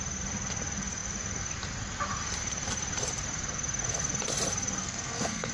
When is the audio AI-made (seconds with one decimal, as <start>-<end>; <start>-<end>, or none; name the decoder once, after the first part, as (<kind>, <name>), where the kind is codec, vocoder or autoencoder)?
4.8-5.5 (codec, SNAC)